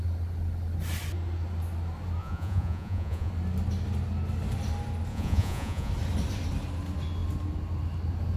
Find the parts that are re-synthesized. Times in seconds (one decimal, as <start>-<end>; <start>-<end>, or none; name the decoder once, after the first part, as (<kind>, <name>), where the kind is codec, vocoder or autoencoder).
2.2-3.3 (vocoder, Vocos); 5.1-5.9